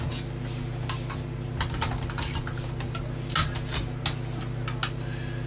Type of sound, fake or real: real